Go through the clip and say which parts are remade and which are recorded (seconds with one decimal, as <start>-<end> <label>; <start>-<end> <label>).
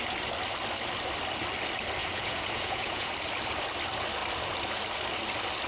0.0-2.0 recorded; 2.0-3.1 remade; 3.1-5.7 recorded